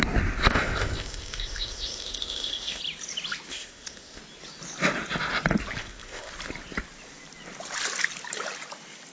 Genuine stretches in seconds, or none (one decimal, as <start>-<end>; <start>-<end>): 0.0-0.4; 2.8-3.5; 4.2-5.8; 6.3-9.1